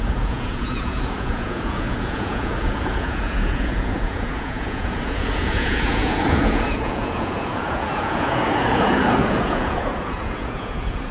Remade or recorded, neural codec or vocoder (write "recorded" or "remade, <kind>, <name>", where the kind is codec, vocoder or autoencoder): remade, vocoder, Vocos